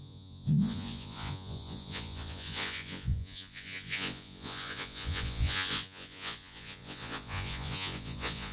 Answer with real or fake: fake